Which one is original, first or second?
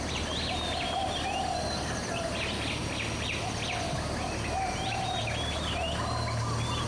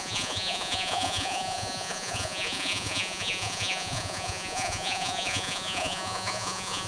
first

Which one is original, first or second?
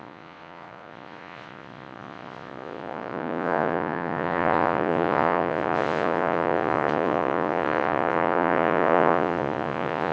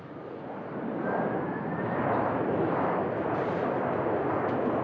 second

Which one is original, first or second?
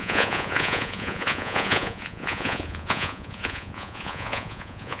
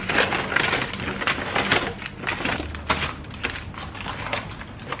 second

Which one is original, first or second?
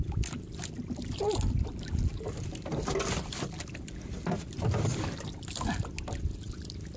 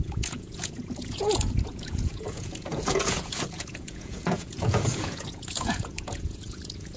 first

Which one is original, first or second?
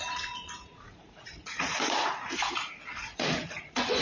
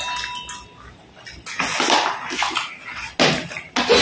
second